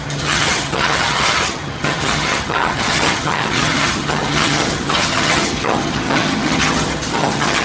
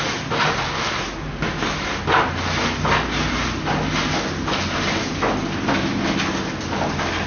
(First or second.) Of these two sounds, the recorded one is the second